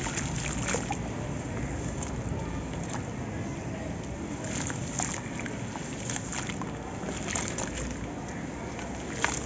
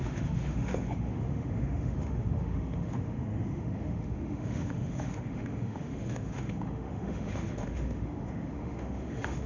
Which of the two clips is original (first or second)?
first